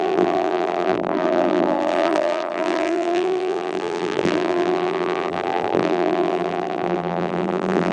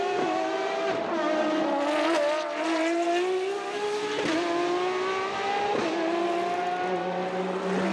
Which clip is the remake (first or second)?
first